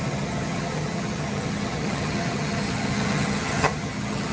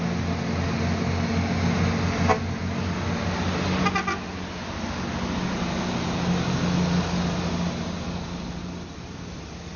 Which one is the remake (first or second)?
first